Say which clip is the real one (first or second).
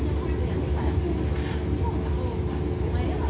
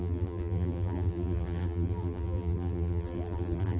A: first